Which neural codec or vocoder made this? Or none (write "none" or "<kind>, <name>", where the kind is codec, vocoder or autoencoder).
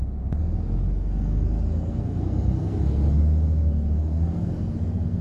codec, SNAC